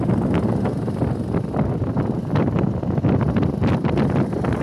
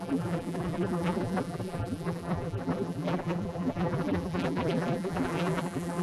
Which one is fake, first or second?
second